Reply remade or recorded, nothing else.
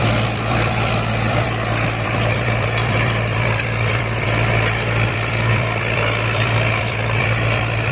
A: remade